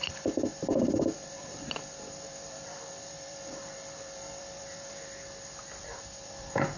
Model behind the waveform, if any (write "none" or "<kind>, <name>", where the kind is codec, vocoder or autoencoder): vocoder, BigVGAN v2